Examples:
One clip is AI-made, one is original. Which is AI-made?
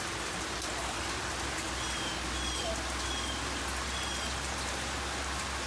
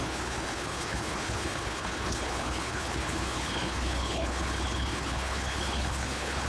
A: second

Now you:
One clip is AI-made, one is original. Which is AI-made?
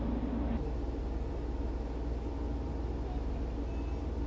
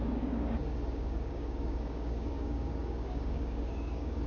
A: second